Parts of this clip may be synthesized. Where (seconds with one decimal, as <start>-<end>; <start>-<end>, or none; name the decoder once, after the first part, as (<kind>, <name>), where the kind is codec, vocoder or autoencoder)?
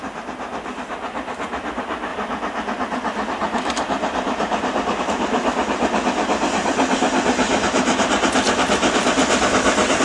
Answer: none